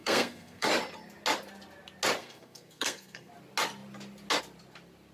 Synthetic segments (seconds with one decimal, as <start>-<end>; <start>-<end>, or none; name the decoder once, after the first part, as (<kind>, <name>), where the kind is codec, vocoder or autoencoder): 0.0-0.7 (codec, SNAC); 2.2-3.3